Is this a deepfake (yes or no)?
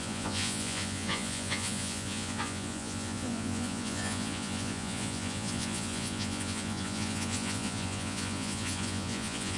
yes